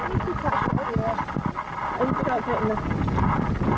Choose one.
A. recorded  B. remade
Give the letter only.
A